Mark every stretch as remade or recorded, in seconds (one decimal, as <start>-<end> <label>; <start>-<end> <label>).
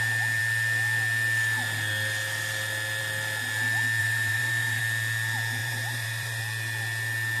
0.0-4.0 recorded; 4.0-4.8 remade; 4.8-5.6 recorded; 5.6-6.4 remade; 6.4-7.4 recorded